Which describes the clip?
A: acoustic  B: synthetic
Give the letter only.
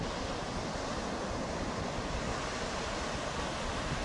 A